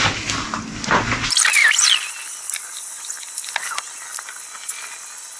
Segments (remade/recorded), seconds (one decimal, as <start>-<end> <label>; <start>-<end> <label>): 0.0-5.4 recorded